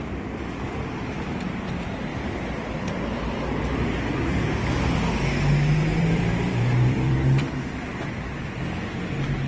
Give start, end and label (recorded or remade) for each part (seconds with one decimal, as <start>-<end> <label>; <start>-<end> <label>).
0.0-2.1 recorded; 2.1-2.9 remade; 2.9-6.0 recorded; 6.0-7.5 remade; 7.5-9.5 recorded